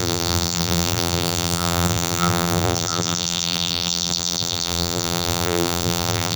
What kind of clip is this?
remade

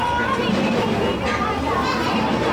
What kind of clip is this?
recorded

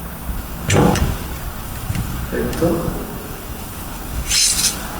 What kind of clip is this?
remade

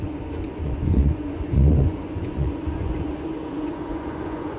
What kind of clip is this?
remade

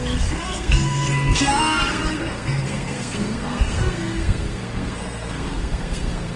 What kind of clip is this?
remade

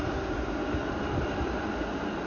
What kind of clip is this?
recorded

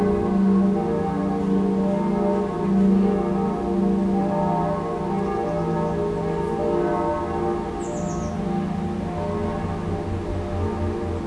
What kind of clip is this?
recorded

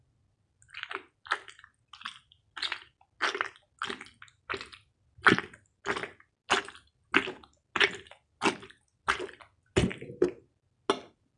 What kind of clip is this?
recorded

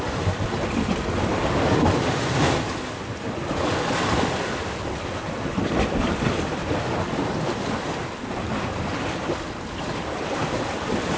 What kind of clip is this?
recorded